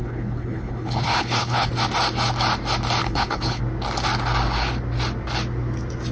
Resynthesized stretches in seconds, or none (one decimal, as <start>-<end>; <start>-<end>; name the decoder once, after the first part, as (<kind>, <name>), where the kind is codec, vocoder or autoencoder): 0.0-1.7 (codec, HILCodec); 3.0-3.6